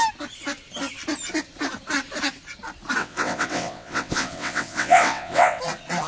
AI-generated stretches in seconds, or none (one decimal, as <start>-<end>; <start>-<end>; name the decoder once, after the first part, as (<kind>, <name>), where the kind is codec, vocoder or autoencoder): 3.0-5.6 (vocoder, WaveNeXt)